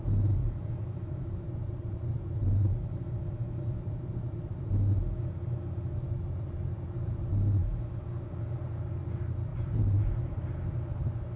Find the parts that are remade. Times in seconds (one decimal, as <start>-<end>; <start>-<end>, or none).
0.4-4.7; 9.5-10.1